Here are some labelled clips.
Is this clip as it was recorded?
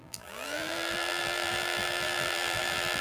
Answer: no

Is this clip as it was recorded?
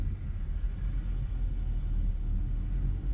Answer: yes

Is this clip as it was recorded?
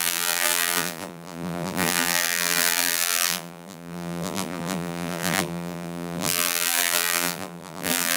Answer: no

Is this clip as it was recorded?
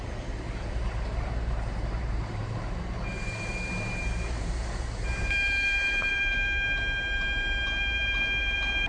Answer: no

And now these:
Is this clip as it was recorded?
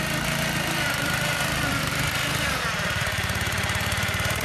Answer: no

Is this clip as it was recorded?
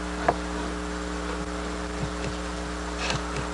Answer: no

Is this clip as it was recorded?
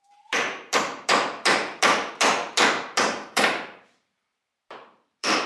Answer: no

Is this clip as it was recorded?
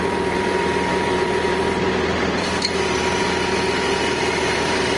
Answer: no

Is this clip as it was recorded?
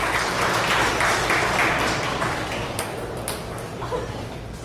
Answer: no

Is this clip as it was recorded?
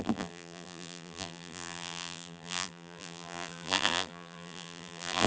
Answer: no